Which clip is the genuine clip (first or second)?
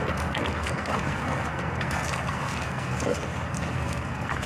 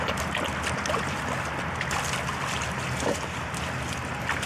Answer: second